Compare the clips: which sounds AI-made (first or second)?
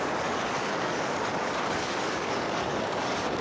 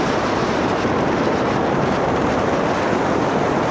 first